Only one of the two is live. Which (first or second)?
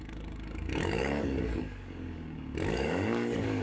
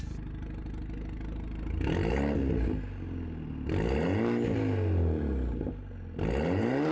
second